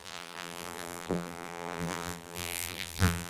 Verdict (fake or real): fake